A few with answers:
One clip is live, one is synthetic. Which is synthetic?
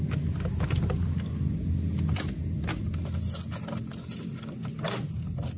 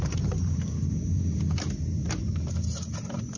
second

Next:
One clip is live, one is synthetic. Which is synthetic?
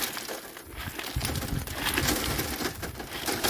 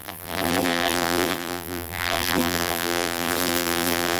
second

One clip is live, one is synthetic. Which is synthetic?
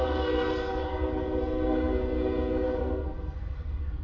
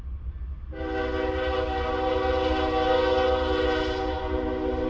first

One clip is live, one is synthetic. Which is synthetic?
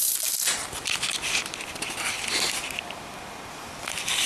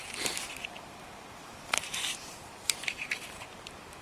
second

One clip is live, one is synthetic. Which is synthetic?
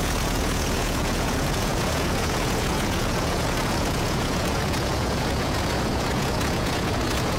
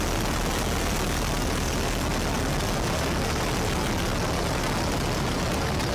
first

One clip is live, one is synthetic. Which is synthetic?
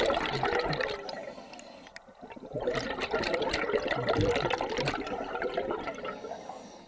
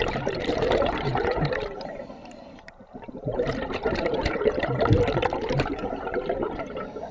second